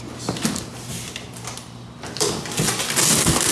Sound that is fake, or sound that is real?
real